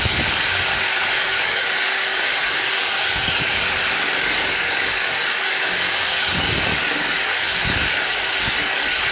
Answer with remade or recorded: remade